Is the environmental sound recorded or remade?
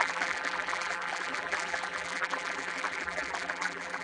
remade